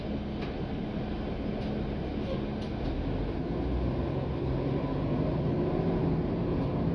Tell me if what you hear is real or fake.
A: real